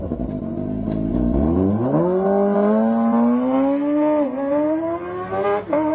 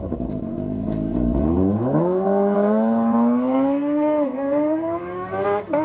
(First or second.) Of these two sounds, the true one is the first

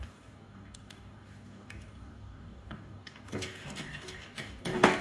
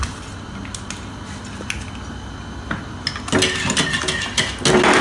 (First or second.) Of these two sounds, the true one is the second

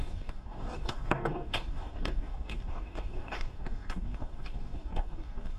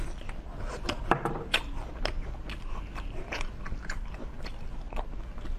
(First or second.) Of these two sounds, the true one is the second